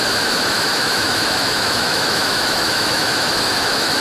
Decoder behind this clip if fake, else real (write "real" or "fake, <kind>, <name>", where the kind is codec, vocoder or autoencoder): fake, autoencoder, DAC-VAE